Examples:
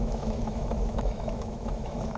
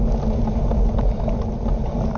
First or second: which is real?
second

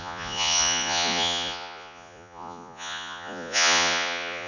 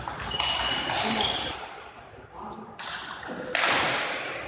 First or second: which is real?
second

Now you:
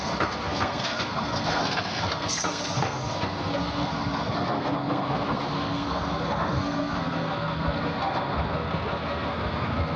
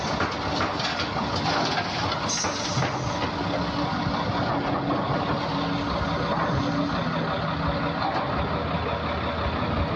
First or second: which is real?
second